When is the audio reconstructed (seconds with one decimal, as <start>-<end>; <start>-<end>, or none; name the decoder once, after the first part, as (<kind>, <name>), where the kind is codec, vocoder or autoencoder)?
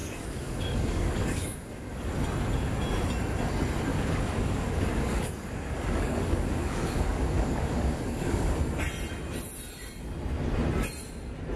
0.0-2.1 (codec, DAC); 3.9-8.6